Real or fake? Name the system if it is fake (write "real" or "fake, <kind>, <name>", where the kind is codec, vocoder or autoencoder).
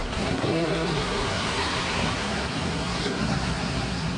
fake, codec, SNAC